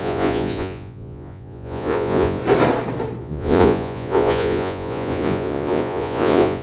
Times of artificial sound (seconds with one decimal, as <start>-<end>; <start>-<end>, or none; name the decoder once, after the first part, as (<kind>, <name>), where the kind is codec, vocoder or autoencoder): 0.0-2.4 (vocoder, Vocos); 3.2-6.6